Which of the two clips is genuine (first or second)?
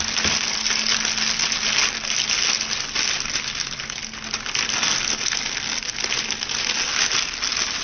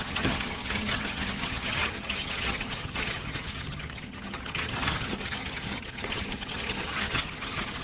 first